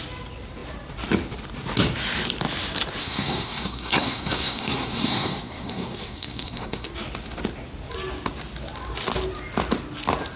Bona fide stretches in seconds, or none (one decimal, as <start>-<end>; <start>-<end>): 0.0-3.0; 6.9-10.4